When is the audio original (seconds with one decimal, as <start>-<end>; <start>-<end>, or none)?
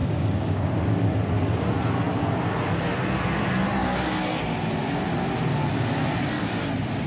0.6-7.1